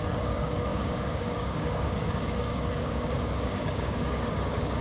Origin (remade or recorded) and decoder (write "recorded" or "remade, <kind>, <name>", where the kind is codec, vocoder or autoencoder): remade, codec, DAC